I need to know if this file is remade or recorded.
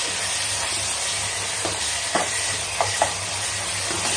recorded